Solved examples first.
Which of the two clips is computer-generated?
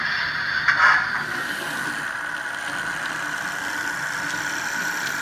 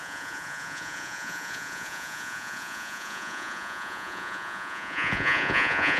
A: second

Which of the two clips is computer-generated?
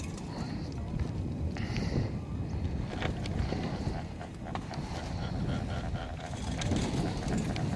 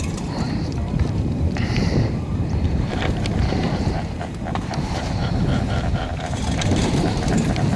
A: second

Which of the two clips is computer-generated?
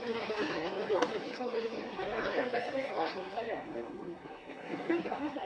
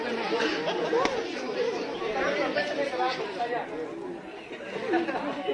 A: first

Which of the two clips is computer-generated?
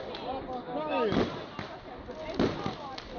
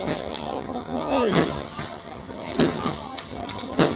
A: second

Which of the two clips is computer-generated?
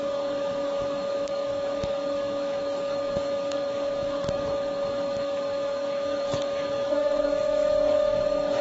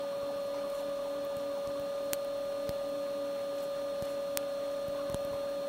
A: first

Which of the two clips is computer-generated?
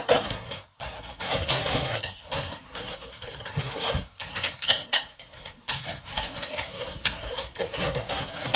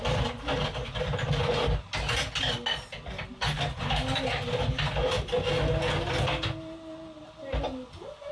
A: first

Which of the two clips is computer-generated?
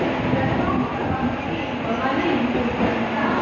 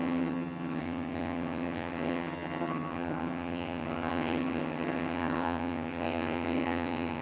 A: second